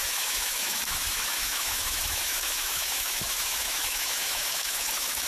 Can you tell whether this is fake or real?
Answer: fake